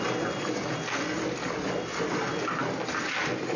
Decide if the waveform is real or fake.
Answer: real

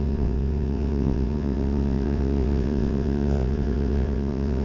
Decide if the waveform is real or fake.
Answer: fake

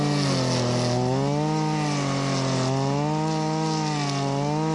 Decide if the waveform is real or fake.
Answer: real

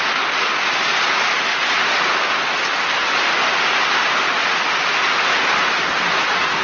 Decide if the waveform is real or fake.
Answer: real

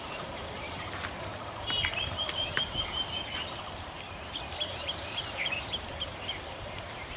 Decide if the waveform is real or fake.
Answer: fake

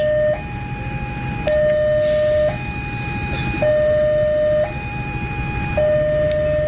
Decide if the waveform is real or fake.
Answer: real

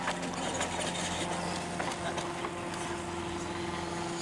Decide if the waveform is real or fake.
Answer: real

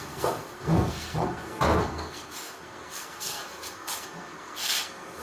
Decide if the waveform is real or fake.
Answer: fake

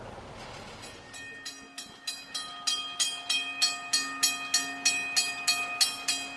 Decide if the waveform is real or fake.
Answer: real